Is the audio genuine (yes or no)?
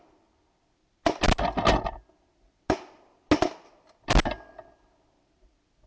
yes